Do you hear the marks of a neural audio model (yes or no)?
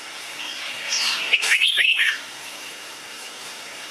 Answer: yes